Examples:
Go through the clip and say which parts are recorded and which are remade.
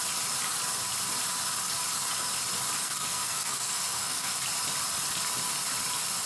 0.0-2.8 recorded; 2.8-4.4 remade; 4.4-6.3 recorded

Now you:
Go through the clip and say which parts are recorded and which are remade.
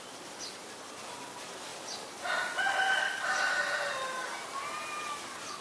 0.0-5.6 recorded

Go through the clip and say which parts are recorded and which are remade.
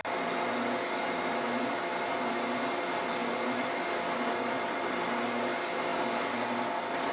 0.0-7.1 recorded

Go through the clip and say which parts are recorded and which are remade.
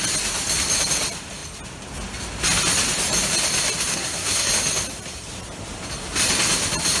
0.0-3.9 recorded; 3.9-4.5 remade; 4.5-7.0 recorded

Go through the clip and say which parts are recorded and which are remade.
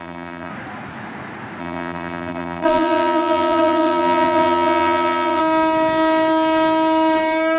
0.0-0.5 remade; 0.5-1.6 recorded; 1.6-5.4 remade; 5.4-7.6 recorded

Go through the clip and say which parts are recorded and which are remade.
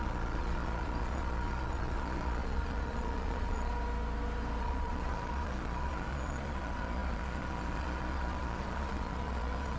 0.0-3.7 remade; 3.7-4.6 recorded; 4.6-9.8 remade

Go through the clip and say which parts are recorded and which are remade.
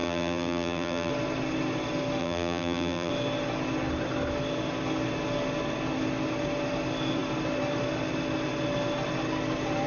0.0-1.1 remade; 1.1-2.2 recorded; 2.2-3.1 remade; 3.1-9.9 recorded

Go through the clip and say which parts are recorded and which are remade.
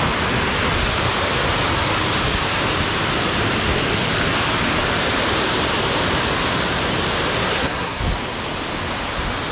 0.0-7.4 recorded; 7.4-8.0 remade; 8.0-9.5 recorded